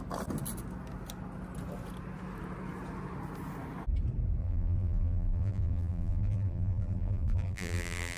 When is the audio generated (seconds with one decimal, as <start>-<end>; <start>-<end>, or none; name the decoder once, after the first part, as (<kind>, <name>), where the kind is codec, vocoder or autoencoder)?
4.4-8.2 (vocoder, BigVGAN v2)